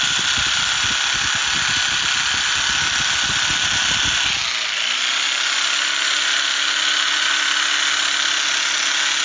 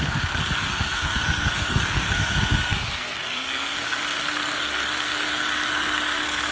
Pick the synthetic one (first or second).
second